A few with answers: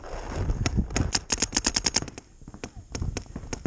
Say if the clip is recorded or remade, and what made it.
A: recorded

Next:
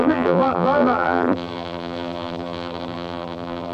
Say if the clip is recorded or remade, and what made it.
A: remade, vocoder, BigVGAN v2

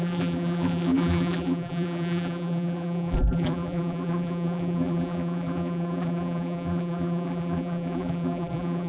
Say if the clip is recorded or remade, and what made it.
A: remade, vocoder, BigVGAN v2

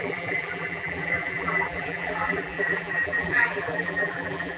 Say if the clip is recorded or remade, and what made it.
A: remade, vocoder, BigVGAN v2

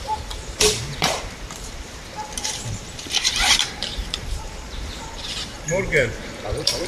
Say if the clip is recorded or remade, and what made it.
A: remade, vocoder, BigVGAN v2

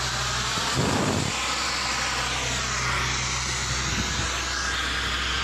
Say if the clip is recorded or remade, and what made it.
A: recorded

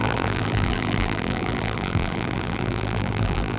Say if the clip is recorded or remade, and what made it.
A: remade, vocoder, BigVGAN v2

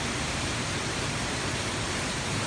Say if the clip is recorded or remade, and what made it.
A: remade, vocoder, BigVGAN v2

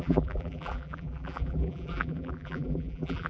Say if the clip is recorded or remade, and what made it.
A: remade, vocoder, BigVGAN v2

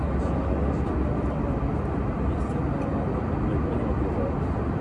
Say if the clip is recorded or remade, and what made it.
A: recorded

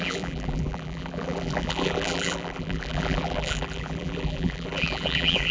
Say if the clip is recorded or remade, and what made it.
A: remade, vocoder, BigVGAN v2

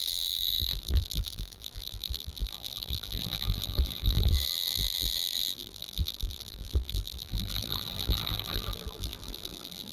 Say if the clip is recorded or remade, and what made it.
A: remade, vocoder, BigVGAN v2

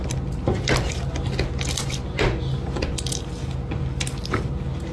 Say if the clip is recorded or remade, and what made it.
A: recorded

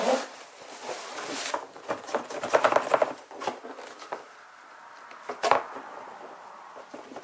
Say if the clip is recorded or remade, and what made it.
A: remade, vocoder, BigVGAN v2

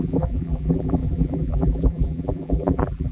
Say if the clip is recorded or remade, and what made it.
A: remade, vocoder, BigVGAN v2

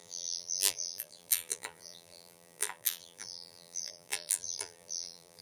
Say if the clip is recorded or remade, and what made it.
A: remade, vocoder, BigVGAN v2